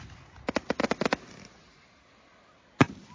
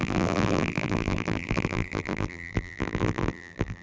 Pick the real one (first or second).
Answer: first